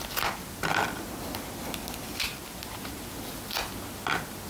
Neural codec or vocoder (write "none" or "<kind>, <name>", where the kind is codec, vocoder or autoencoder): none